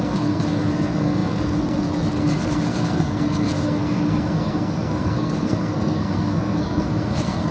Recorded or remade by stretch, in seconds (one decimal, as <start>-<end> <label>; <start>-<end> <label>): 0.0-7.5 remade